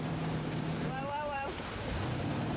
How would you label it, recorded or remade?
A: remade